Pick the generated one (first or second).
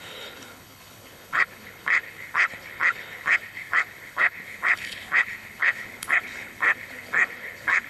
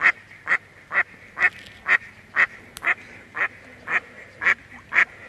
first